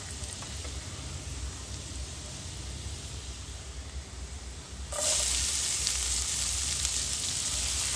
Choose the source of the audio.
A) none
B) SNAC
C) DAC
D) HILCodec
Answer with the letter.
A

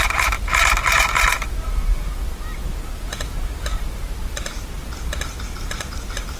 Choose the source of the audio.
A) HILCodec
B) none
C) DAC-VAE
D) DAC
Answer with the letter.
B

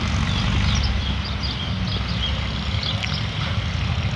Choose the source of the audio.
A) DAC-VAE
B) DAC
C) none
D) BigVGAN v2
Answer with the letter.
C